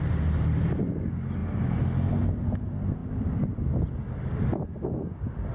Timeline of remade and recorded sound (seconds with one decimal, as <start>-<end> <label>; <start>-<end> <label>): 0.0-3.0 recorded; 3.0-4.5 remade; 4.5-5.5 recorded